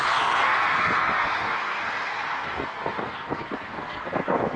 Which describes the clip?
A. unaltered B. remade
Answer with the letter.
B